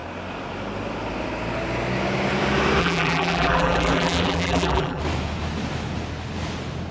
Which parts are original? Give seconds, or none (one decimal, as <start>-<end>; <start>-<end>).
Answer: 0.0-2.8; 5.0-6.9